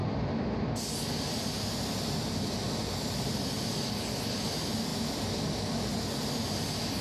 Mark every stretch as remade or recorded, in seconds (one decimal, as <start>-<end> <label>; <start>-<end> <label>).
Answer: 0.0-4.9 recorded; 4.9-5.4 remade; 5.4-7.0 recorded